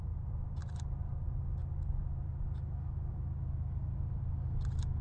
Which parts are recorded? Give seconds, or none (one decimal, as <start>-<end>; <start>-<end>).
0.0-5.0